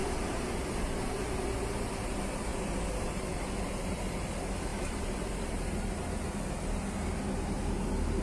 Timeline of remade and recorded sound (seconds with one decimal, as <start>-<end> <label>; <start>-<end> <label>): 0.0-0.5 remade; 0.5-4.7 recorded; 4.7-5.8 remade; 5.8-8.2 recorded